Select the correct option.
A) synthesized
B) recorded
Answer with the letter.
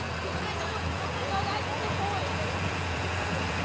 A